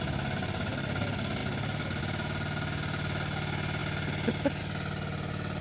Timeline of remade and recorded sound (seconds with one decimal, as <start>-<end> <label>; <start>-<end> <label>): 0.0-5.6 recorded